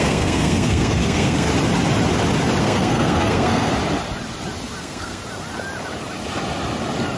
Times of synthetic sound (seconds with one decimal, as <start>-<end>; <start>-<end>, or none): 0.0-1.5; 2.6-3.7; 4.8-5.2

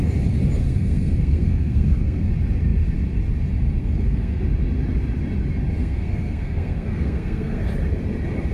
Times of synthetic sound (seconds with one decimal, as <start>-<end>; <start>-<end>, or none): 0.6-2.3; 3.8-4.4; 5.8-7.7

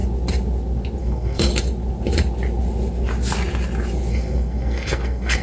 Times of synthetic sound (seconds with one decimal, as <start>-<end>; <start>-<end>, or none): 1.0-1.5; 4.1-5.4

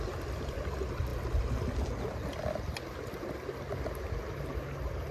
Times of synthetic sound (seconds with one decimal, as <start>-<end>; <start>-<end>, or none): none

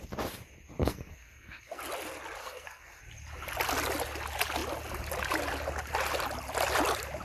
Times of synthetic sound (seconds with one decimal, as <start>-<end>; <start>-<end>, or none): 0.8-1.8; 2.4-3.0

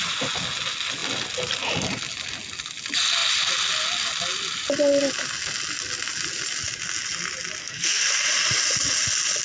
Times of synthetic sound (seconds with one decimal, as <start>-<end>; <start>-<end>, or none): 7.6-8.2

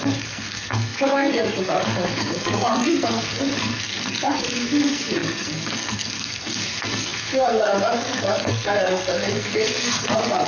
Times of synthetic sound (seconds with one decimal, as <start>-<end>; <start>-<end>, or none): 0.0-10.5